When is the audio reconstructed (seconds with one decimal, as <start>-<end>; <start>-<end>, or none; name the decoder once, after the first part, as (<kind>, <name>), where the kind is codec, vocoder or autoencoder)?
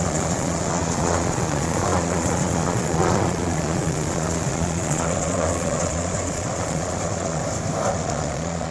0.0-7.4 (vocoder, Vocos); 7.9-8.7